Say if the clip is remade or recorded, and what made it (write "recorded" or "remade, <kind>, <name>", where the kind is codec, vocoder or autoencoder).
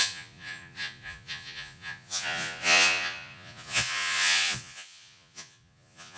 remade, vocoder, Vocos